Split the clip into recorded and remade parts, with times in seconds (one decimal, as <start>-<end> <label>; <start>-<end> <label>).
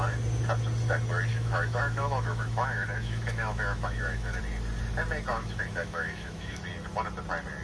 0.0-1.3 recorded; 1.3-4.4 remade; 4.4-5.3 recorded; 5.3-6.6 remade; 6.6-7.6 recorded